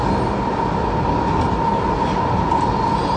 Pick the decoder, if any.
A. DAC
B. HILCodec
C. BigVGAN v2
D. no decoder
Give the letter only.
D